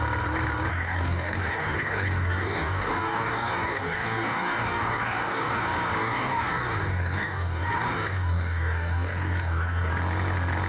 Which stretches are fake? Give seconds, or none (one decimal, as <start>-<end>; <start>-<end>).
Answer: 0.7-5.6; 6.0-9.9